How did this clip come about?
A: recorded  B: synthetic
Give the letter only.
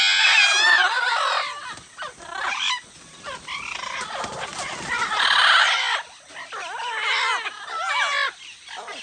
A